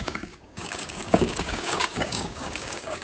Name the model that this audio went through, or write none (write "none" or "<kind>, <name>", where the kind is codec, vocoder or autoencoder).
codec, DAC